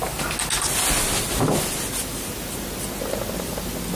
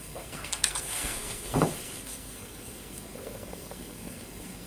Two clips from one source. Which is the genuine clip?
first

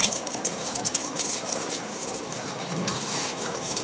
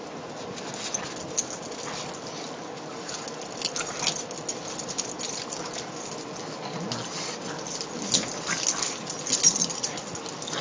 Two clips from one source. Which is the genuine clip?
second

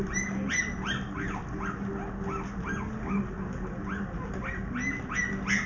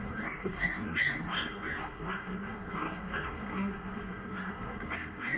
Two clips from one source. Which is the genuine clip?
first